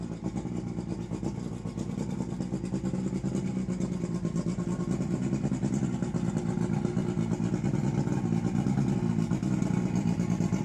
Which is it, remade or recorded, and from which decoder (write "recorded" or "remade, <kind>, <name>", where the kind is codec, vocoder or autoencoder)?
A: recorded